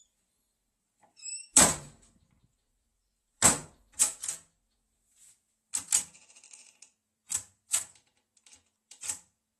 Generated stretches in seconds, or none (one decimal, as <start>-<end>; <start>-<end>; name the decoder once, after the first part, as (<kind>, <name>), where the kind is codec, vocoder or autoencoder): 0.0-4.2 (vocoder, BigVGAN v2); 6.3-9.6